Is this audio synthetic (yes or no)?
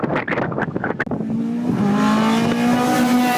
no